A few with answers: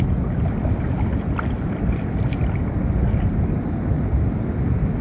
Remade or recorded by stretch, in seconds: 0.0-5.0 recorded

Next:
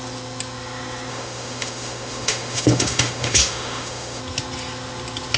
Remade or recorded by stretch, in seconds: 0.0-1.1 recorded; 1.1-4.2 remade; 4.2-5.4 recorded

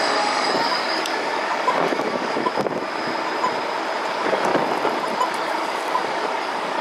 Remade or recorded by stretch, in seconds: 0.0-2.5 remade; 2.5-4.1 recorded; 4.1-4.5 remade; 4.5-5.3 recorded; 5.3-6.8 remade

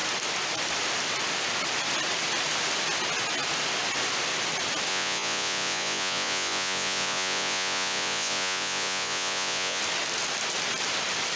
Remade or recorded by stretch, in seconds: 0.0-4.9 recorded; 4.9-9.8 remade; 9.8-11.4 recorded

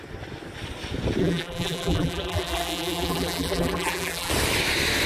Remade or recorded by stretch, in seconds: 0.0-1.2 recorded; 1.2-4.3 remade; 4.3-5.1 recorded

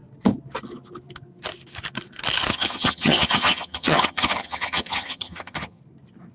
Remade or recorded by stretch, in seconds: 0.0-2.5 recorded; 2.5-5.8 remade; 5.8-6.3 recorded